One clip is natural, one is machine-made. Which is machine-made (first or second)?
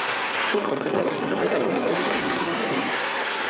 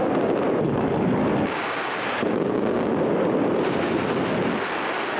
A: first